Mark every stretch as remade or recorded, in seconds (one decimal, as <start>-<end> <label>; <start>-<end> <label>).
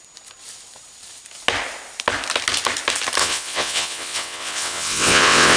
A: 0.0-3.2 recorded; 3.2-5.6 remade